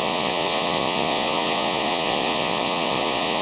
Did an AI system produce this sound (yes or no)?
yes